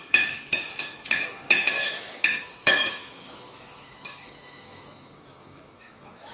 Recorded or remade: remade